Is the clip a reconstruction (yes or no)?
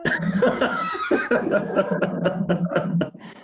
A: yes